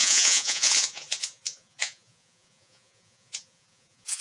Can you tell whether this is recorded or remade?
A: remade